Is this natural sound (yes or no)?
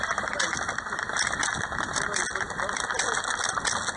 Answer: yes